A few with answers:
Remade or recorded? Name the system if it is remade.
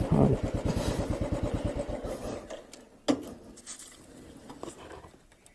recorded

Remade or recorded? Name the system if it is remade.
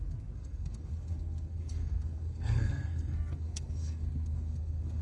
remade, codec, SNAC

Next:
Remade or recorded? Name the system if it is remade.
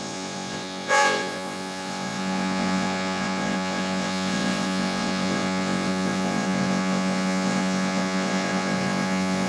remade, vocoder, Vocos